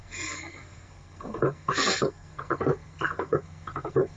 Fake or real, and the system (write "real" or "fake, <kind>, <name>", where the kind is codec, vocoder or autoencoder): fake, codec, SNAC